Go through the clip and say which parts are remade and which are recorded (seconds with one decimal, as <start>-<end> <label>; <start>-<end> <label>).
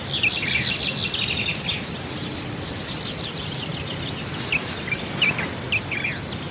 0.0-6.5 recorded